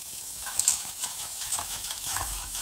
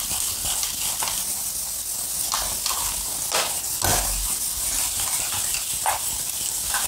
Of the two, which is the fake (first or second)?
first